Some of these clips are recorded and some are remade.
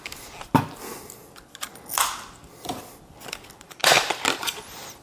recorded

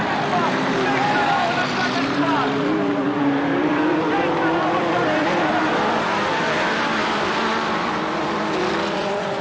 remade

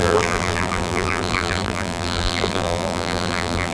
remade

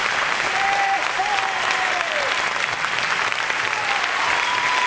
remade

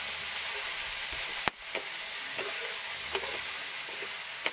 recorded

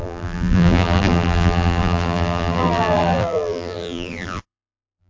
remade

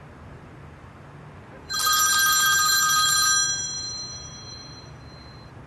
remade